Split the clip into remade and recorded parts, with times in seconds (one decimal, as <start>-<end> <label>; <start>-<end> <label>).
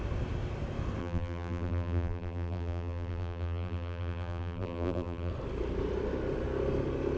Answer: 0.0-1.0 recorded; 1.0-5.3 remade; 5.3-7.2 recorded